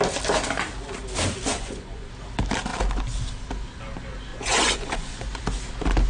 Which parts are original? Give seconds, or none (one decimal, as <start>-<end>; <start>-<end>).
0.0-1.5; 2.1-4.3; 5.2-6.1

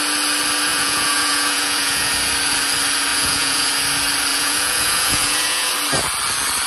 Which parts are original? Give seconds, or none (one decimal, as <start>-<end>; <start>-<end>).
0.0-0.7; 2.1-3.1; 3.7-4.3; 5.7-6.7

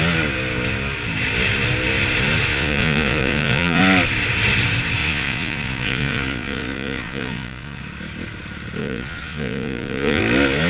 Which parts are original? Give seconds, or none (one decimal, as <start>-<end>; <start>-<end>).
0.0-2.5; 3.8-5.0; 7.8-8.8; 10.2-10.7

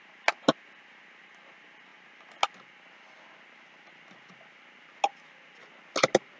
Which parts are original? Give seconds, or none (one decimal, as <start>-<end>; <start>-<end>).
0.0-6.4

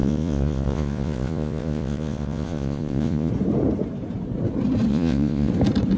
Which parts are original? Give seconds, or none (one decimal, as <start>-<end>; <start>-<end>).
3.3-4.9; 5.5-6.0